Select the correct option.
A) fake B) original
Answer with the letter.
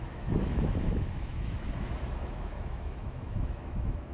A